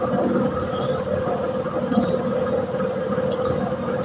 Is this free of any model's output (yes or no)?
yes